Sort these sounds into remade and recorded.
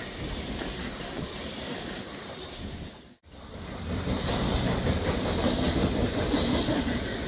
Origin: recorded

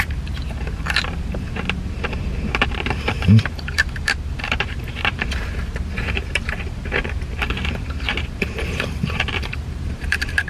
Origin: remade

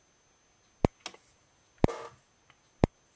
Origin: recorded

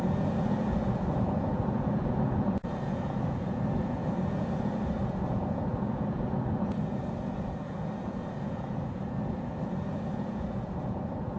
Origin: remade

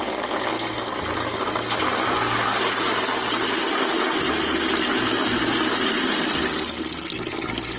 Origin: recorded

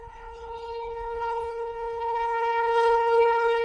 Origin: remade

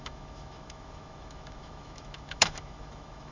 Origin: remade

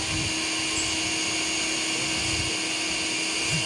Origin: recorded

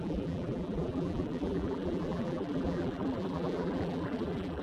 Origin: remade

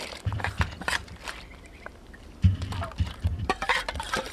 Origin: remade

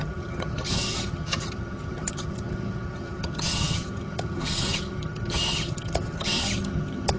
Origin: remade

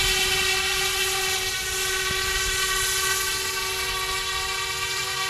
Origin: recorded